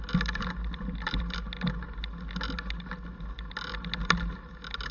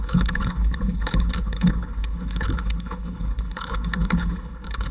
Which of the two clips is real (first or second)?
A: first